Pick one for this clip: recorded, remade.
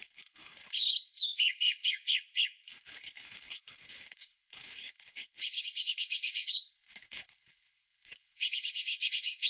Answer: remade